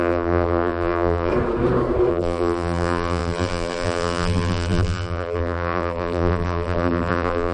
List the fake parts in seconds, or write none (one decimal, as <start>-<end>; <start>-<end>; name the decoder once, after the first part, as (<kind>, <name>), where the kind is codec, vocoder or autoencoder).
0.0-1.3 (vocoder, BigVGAN v2); 2.1-7.5